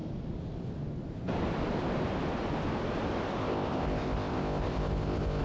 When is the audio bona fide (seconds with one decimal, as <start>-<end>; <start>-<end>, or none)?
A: 0.0-3.4